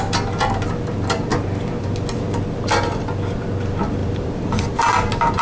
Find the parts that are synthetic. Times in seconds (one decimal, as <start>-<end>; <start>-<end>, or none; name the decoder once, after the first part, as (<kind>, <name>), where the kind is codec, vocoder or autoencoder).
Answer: 4.0-4.9 (vocoder, BigVGAN v2)

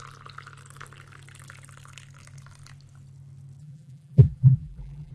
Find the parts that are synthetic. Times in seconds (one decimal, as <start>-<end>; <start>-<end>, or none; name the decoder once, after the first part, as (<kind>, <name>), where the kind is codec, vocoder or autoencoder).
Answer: 3.6-5.1 (vocoder, BigVGAN v2)

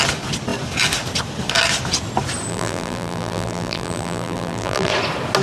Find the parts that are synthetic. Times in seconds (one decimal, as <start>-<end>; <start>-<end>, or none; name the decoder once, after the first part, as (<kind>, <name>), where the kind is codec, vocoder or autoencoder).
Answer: 2.5-4.9 (vocoder, BigVGAN v2)